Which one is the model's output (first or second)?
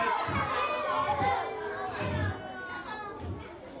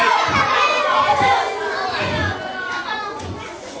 second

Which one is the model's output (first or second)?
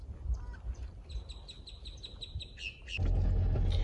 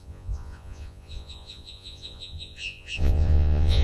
second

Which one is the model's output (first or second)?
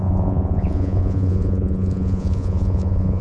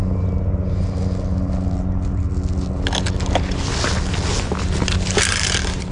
first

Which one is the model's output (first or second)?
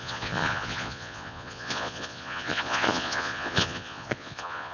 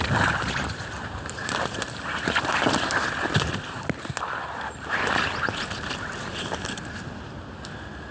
first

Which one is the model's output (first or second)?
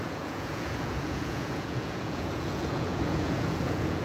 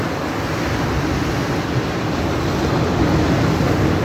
first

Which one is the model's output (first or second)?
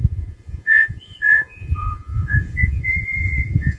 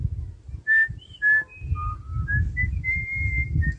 first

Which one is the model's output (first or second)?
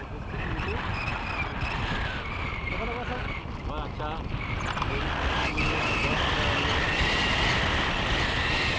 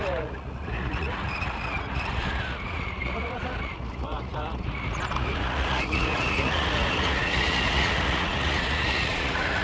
second